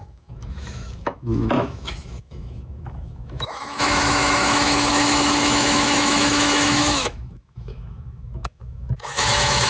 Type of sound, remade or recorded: remade